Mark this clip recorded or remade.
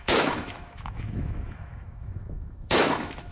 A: remade